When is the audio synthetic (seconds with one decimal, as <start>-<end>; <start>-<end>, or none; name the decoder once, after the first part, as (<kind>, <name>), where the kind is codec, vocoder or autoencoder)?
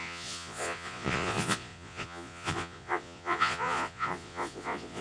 0.0-5.0 (vocoder, Vocos)